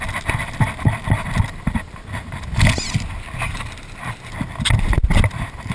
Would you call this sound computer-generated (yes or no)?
no